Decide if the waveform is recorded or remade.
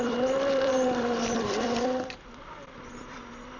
remade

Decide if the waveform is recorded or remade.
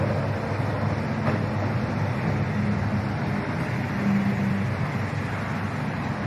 recorded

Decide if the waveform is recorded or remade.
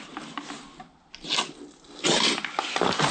recorded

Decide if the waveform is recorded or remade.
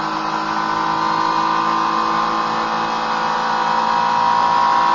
recorded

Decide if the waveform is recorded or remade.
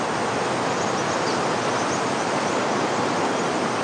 recorded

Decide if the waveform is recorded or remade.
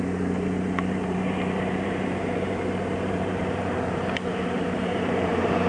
remade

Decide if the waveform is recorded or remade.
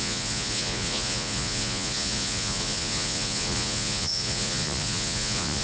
remade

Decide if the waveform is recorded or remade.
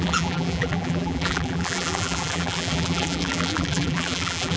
remade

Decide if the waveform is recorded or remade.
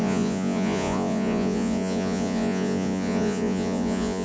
remade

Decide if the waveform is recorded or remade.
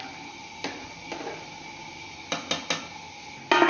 recorded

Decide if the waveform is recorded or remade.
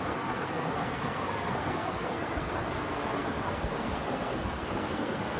remade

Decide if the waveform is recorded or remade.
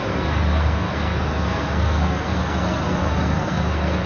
remade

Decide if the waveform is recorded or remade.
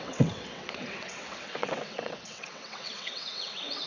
remade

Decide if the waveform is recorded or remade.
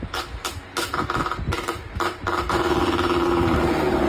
remade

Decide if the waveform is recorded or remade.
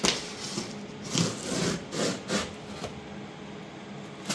recorded